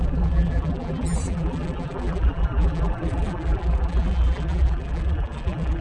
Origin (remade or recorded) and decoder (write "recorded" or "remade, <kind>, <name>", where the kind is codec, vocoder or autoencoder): remade, vocoder, BigVGAN v2